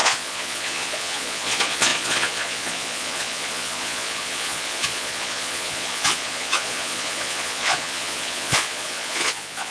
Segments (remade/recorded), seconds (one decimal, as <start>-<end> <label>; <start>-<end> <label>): 0.0-9.7 remade